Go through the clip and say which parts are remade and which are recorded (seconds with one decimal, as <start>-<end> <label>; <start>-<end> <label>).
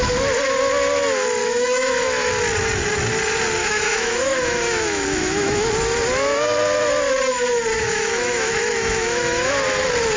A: 0.0-1.4 recorded; 1.4-2.3 remade; 2.3-3.6 recorded; 3.6-5.7 remade; 5.7-7.7 recorded; 7.7-9.5 remade; 9.5-10.2 recorded